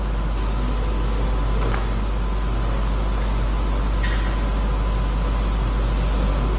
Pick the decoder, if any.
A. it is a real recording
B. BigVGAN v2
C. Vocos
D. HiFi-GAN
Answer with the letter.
A